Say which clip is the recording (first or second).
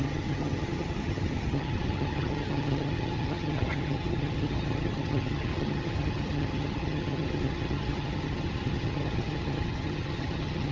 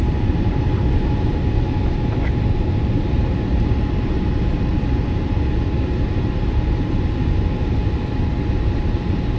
second